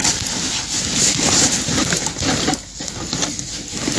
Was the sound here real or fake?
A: real